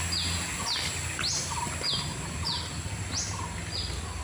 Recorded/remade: recorded